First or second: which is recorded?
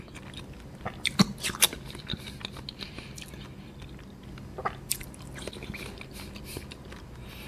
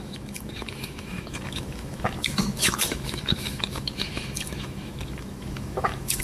first